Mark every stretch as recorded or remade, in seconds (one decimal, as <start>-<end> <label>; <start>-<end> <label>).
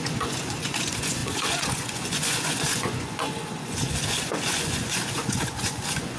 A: 0.0-6.2 remade